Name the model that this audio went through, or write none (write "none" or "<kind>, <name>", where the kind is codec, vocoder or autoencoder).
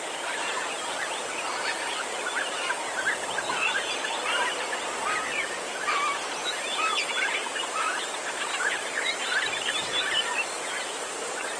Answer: vocoder, BigVGAN v2